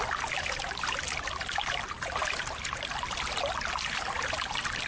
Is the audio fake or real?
real